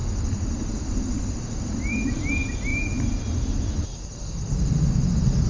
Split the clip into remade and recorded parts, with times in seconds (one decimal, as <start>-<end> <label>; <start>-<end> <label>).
0.0-5.5 recorded